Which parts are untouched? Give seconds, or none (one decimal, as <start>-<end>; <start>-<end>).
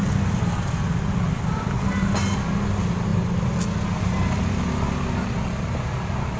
0.0-6.4